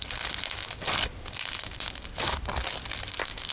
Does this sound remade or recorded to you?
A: recorded